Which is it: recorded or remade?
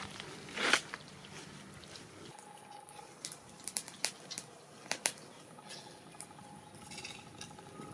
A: recorded